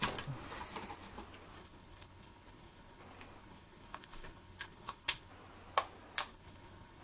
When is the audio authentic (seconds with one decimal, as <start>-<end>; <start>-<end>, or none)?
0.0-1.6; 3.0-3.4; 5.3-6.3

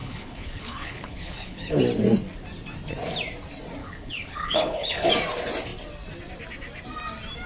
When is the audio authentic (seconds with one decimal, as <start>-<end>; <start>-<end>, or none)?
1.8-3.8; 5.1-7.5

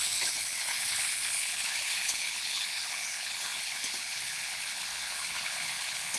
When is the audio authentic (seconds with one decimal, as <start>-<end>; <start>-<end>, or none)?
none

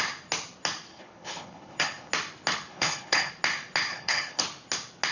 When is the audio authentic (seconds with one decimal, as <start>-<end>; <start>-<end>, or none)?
0.0-0.9; 2.1-2.7; 3.3-3.9; 4.4-5.1

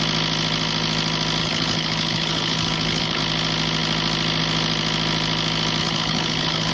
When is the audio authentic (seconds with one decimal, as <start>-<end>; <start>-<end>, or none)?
0.0-1.4; 3.2-5.8

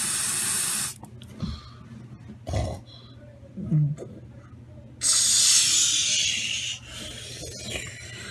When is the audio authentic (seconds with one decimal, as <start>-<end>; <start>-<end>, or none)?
0.0-8.3

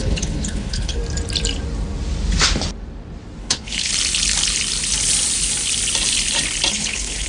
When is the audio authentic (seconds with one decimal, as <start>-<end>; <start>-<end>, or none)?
1.0-3.4; 3.9-6.7

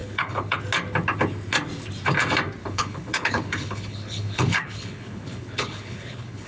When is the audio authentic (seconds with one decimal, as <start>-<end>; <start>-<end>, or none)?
0.6-2.6